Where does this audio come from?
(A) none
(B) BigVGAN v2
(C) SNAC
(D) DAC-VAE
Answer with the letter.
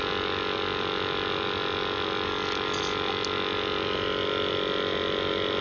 A